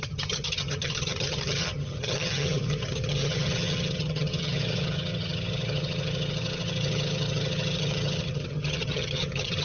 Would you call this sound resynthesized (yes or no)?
yes